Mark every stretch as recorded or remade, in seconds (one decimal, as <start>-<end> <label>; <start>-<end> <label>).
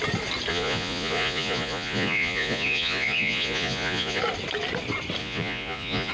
0.0-0.5 recorded; 0.5-4.2 remade; 4.2-5.2 recorded; 5.2-6.1 remade